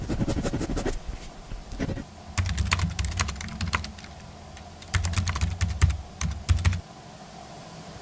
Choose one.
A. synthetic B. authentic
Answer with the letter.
B